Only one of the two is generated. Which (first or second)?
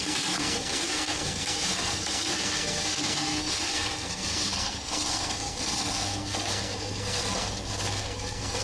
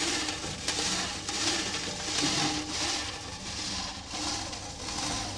first